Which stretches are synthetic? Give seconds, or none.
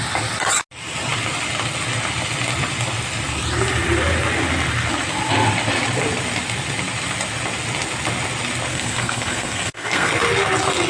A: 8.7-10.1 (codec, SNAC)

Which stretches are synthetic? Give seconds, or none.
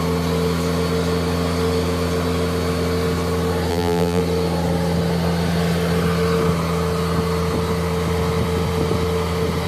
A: 3.7-4.2 (vocoder, BigVGAN v2)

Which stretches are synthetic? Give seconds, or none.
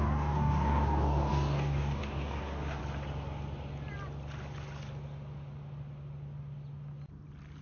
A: 0.0-2.8 (codec, DAC)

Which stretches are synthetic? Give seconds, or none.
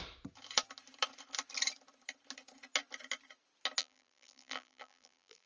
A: 3.8-5.5 (vocoder, BigVGAN v2)